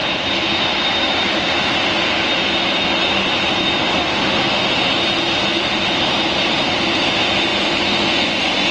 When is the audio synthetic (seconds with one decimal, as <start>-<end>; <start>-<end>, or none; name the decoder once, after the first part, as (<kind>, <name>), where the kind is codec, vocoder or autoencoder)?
7.5-8.7 (vocoder, Vocos)